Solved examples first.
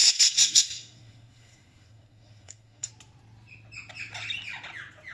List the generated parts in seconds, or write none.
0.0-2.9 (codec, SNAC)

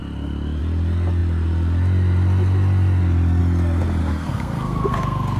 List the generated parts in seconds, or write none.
4.0-5.4 (codec, SNAC)

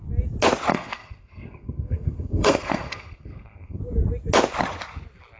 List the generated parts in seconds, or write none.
0.7-3.8 (codec, SNAC)

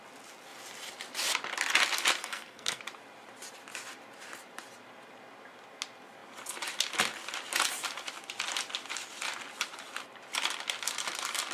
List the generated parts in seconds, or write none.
2.2-2.8 (codec, SNAC)

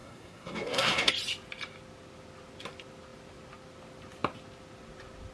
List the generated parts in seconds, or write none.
0.0-1.1 (codec, SNAC)